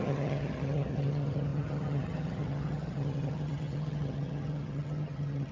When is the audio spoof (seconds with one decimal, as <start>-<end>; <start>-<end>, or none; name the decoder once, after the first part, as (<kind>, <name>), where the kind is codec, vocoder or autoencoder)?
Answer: 0.0-5.5 (vocoder, HiFi-GAN)